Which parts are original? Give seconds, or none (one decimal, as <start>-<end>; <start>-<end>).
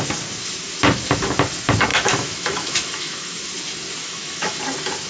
0.0-1.9; 3.4-4.0; 4.6-5.1